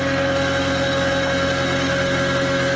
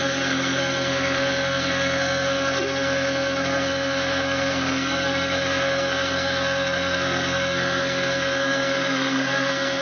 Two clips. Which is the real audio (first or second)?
first